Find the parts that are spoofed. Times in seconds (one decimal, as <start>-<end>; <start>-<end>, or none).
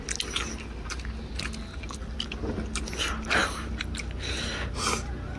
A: 3.4-4.8